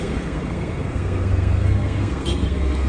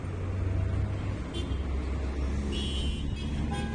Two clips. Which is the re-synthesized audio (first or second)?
first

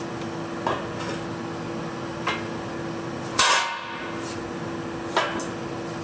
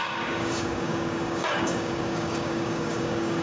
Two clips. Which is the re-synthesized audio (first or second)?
second